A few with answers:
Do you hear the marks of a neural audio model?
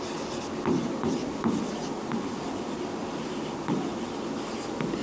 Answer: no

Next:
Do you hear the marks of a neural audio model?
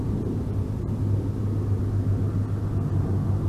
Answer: no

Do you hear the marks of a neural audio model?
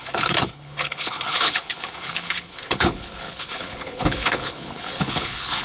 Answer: yes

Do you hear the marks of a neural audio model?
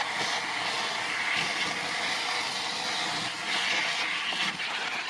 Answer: no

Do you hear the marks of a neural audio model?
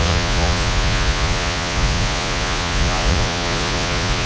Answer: yes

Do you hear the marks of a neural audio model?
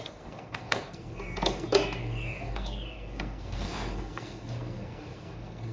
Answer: yes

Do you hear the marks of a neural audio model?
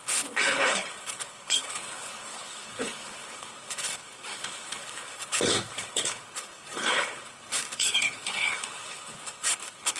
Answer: yes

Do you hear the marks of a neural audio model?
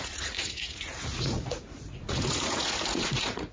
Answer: yes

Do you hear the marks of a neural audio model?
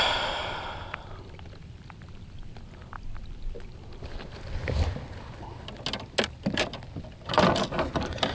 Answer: no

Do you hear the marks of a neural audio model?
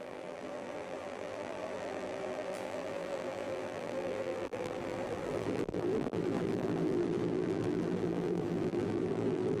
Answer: yes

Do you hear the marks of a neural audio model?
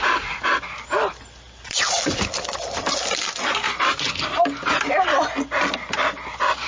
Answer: no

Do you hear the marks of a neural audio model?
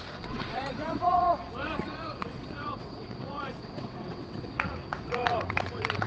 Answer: yes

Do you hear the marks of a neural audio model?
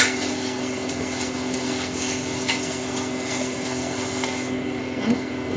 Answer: yes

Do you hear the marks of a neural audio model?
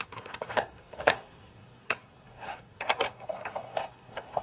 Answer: yes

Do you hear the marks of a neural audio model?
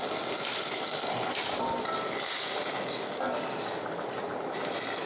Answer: no